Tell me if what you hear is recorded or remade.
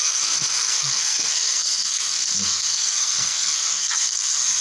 remade